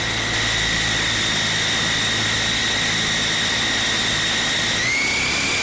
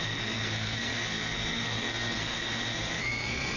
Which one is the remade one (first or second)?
second